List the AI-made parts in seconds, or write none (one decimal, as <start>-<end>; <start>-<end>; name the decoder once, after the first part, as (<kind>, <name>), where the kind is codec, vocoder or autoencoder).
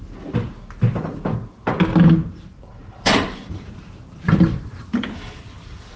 2.2-5.1 (vocoder, BigVGAN v2)